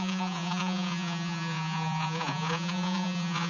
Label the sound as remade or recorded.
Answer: remade